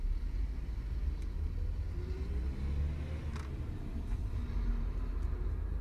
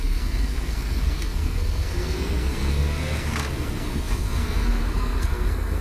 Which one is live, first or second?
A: first